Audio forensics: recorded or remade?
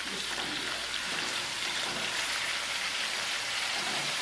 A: remade